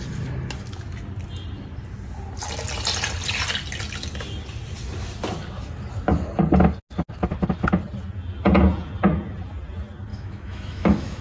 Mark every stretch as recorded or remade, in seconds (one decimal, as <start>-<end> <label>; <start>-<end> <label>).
0.0-10.1 recorded; 10.1-11.2 remade